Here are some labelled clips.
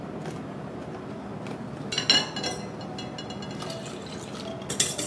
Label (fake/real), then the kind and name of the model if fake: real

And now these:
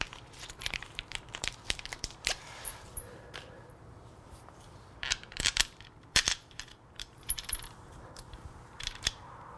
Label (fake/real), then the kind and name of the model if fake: fake, vocoder, BigVGAN v2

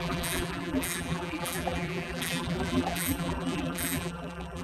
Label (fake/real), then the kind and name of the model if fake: fake, vocoder, BigVGAN v2